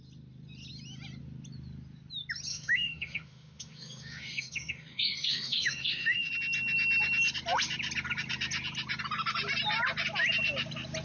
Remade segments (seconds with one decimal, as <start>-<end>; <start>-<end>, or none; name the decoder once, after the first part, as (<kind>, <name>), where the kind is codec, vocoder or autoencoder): 2.5-6.3 (autoencoder, DAC-VAE)